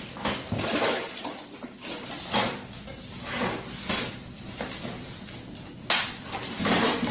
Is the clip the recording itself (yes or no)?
yes